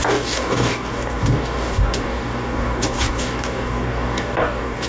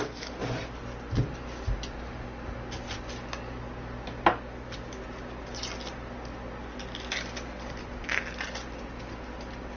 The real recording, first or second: second